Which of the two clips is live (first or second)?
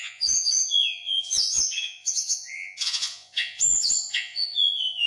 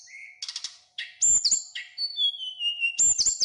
second